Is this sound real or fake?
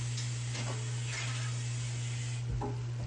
real